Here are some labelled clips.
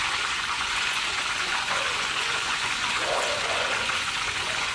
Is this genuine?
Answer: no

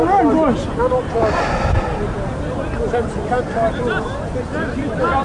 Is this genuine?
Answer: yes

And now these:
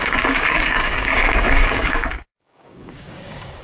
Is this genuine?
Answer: no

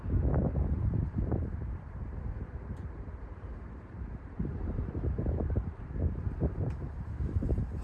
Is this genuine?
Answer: no